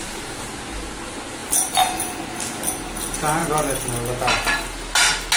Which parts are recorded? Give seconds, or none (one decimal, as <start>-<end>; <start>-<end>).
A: 0.0-3.4; 3.9-5.4